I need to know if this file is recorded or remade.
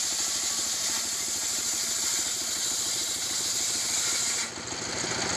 recorded